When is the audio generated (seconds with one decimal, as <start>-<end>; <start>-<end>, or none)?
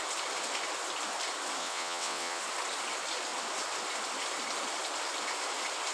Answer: 1.6-2.4